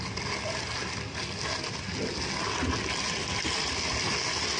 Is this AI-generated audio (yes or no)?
no